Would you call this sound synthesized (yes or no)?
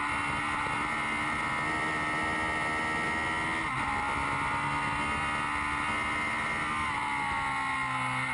no